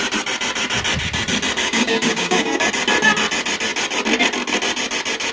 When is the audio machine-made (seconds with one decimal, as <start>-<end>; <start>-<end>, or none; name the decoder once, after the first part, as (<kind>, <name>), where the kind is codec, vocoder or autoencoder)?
1.6-2.7 (codec, DAC)